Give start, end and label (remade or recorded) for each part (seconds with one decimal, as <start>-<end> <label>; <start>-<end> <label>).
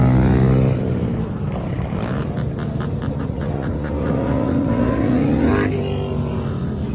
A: 0.0-3.1 recorded; 3.1-5.5 remade; 5.5-6.9 recorded